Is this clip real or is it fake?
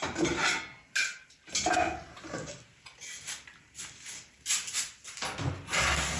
real